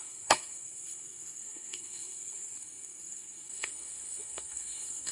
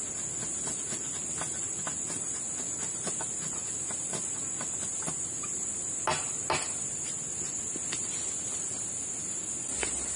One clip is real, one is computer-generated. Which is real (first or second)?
second